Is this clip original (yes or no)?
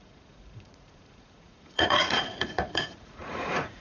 no